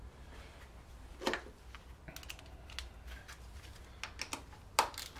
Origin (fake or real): real